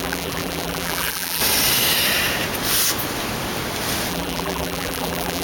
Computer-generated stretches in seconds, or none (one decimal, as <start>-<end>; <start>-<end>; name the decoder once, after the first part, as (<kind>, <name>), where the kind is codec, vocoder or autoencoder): 0.0-1.4 (vocoder, BigVGAN v2); 4.1-5.4